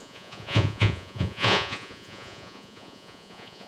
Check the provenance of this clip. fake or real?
fake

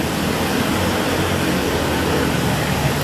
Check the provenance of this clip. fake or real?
real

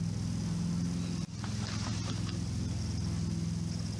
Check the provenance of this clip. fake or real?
real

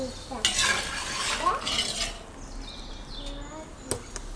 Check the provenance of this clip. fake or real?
real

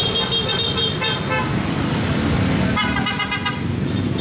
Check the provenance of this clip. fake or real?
real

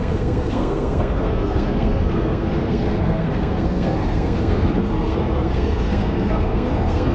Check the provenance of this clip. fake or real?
fake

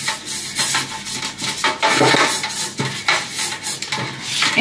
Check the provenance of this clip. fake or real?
real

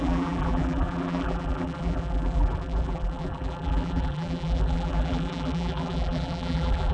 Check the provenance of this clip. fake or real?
fake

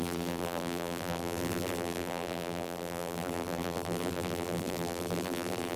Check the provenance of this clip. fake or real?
fake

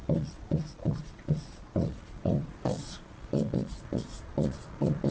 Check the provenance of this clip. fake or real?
fake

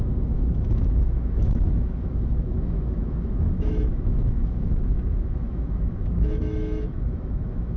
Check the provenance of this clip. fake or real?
fake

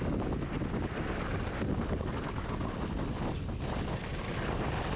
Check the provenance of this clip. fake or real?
real